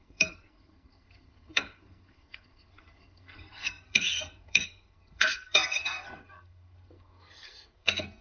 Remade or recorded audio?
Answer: remade